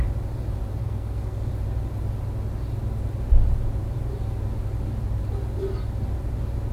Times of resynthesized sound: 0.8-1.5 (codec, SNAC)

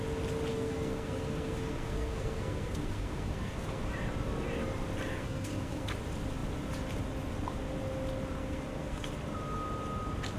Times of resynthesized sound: 0.5-3.8 (codec, SNAC); 5.1-5.9; 8.4-9.1

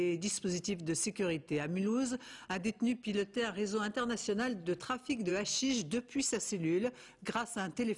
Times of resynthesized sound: none

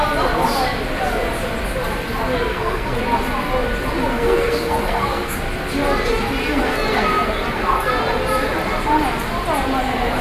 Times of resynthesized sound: 2.5-3.0 (codec, SNAC); 4.1-5.4; 6.4-7.9